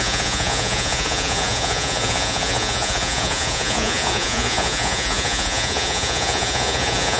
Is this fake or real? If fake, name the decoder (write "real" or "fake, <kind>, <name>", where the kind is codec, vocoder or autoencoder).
fake, vocoder, Vocos